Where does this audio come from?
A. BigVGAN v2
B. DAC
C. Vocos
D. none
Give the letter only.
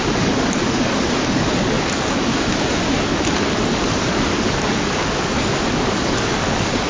B